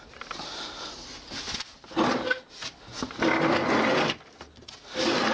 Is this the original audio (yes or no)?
yes